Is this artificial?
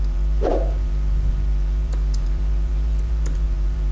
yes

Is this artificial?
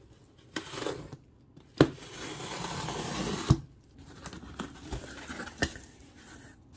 no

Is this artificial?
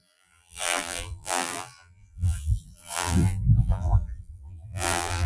yes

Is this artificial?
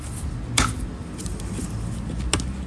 no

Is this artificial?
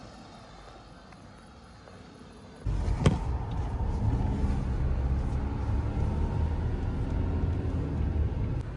no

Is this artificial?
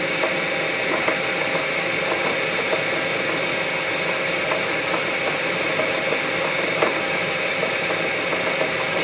no